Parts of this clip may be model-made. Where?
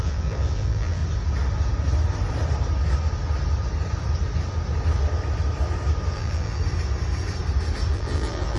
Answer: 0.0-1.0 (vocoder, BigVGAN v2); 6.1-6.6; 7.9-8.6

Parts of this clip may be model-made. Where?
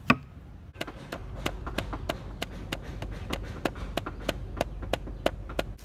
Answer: 1.2-2.5 (vocoder, BigVGAN v2)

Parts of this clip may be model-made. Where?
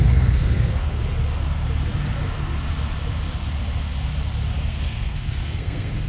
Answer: 0.0-1.0 (codec, SNAC); 4.7-6.1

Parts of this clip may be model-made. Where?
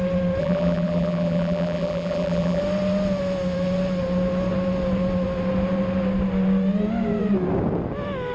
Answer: 0.4-2.6 (vocoder, BigVGAN v2)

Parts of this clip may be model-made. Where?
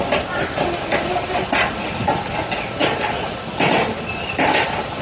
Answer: none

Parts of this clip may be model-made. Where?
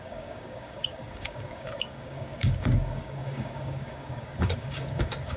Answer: 0.0-5.4 (codec, DAC)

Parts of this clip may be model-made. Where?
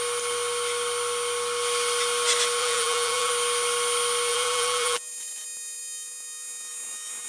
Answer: 2.6-3.3 (vocoder, BigVGAN v2); 4.3-5.1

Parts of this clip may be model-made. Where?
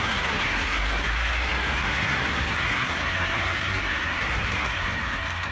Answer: 0.0-5.5 (codec, SNAC)